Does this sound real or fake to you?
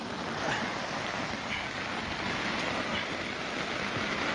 real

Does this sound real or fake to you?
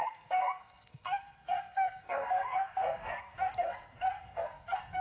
fake